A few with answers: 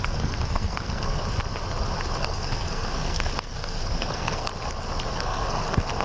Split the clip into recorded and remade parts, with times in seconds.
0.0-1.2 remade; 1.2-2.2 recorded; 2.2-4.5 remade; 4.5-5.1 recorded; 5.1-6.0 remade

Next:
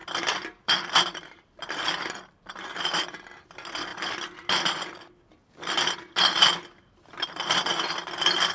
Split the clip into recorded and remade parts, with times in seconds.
0.0-2.4 remade; 2.4-8.5 recorded

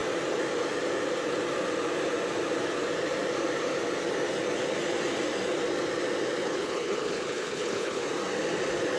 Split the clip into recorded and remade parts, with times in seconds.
0.0-6.4 recorded; 6.4-8.0 remade; 8.0-9.0 recorded

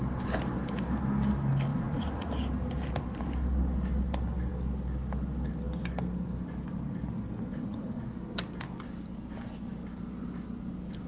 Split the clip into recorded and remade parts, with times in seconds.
0.0-1.7 recorded; 1.7-2.3 remade; 2.3-7.5 recorded; 7.5-8.0 remade; 8.0-11.1 recorded

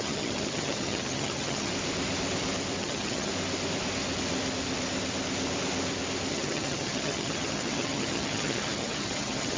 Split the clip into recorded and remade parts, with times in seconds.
0.0-1.7 remade; 1.7-2.8 recorded; 2.8-3.3 remade; 3.3-6.3 recorded; 6.3-9.6 remade